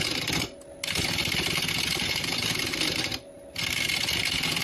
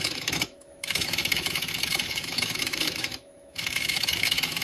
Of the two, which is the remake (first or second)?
second